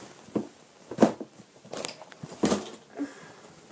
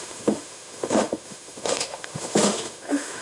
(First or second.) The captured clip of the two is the first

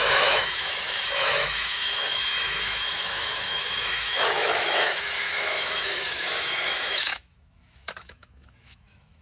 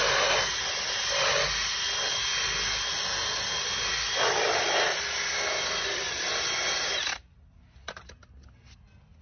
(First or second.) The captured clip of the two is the second